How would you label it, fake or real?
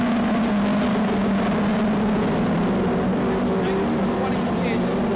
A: real